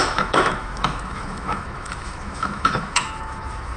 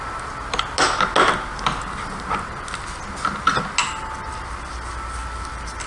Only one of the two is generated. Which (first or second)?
first